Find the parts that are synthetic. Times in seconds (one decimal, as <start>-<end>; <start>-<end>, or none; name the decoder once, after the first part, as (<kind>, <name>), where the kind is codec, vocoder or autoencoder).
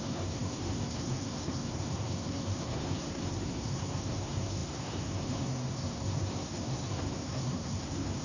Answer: 0.0-8.2 (codec, SNAC)